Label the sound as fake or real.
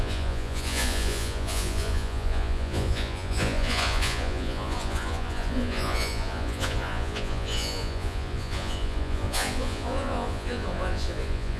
fake